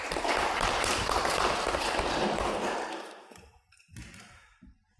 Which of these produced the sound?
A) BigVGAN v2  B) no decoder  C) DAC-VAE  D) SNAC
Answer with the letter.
A